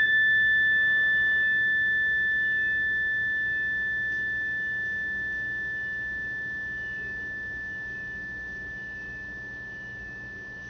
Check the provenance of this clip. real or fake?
real